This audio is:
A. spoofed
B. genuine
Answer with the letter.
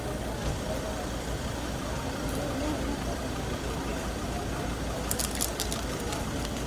B